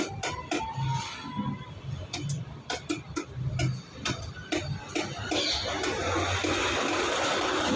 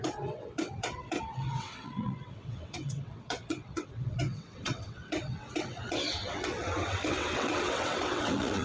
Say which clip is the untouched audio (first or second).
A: first